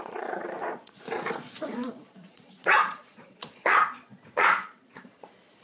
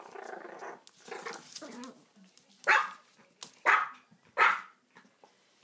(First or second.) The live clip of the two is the second